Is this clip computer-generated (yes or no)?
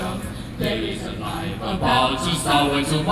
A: no